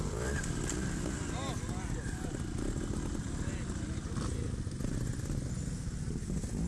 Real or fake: real